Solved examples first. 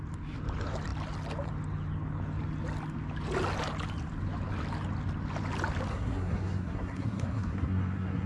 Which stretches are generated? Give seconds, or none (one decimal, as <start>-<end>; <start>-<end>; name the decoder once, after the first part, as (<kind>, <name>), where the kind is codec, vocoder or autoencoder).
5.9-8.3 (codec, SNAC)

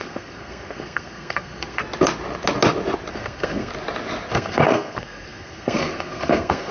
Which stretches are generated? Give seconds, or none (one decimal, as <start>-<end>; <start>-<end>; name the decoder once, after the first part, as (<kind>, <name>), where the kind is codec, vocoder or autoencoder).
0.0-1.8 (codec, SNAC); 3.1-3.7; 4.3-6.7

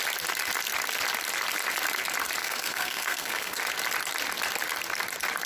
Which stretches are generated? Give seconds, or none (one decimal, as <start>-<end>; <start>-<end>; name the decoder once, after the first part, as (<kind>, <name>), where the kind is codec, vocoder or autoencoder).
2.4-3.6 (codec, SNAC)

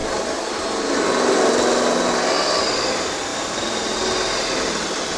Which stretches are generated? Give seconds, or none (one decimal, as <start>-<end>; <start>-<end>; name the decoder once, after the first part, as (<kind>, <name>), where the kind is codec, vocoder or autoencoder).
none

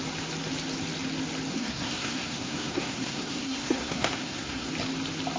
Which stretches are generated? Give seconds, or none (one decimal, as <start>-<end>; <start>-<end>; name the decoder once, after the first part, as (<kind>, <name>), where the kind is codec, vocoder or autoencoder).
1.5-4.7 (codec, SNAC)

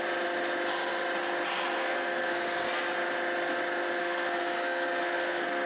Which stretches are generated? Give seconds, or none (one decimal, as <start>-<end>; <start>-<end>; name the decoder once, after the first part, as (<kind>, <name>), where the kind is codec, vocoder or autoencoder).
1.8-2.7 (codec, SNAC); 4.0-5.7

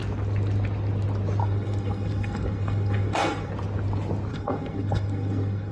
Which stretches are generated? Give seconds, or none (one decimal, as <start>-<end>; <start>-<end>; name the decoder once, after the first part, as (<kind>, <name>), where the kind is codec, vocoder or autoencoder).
1.4-3.5 (codec, SNAC); 4.3-5.7